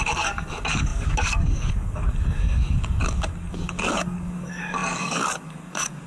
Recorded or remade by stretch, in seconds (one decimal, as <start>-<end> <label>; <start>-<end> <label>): 0.0-6.1 remade